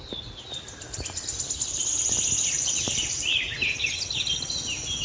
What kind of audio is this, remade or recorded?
recorded